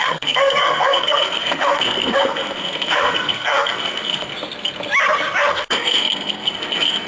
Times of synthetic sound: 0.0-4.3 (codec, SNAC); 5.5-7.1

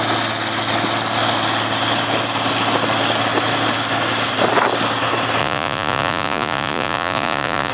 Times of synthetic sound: 5.4-7.7 (vocoder, Vocos)

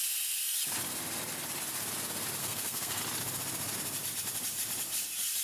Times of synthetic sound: 2.4-3.0 (codec, SNAC)

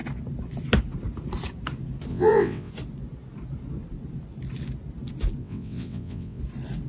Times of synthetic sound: 2.1-2.7 (vocoder, WaveNeXt); 5.4-6.4

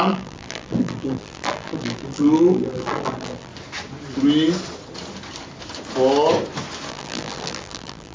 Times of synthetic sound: 0.0-3.5 (vocoder, BigVGAN v2); 6.9-8.1

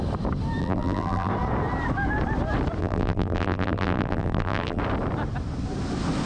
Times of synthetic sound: 0.6-1.3 (vocoder, BigVGAN v2); 2.8-4.8